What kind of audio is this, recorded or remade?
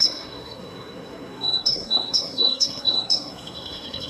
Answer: remade